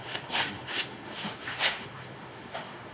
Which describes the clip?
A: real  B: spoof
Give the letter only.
B